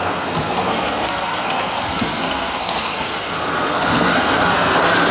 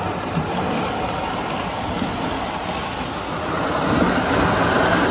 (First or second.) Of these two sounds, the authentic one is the second